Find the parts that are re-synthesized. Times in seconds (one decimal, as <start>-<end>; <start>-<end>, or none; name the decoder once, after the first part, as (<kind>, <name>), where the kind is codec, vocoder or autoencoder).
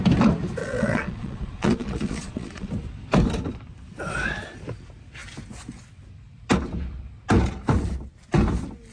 0.6-2.7 (vocoder, Vocos)